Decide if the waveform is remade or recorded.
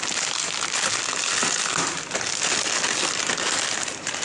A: recorded